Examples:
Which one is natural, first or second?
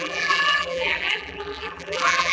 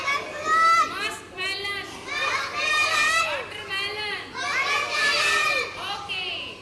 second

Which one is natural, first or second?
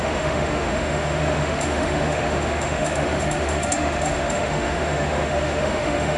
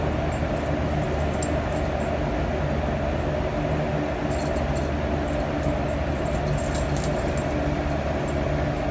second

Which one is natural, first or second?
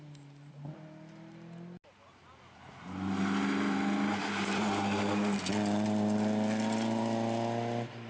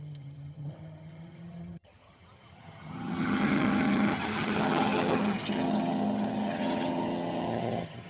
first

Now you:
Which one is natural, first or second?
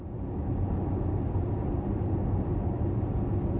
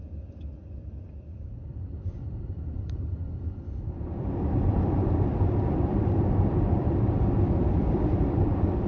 first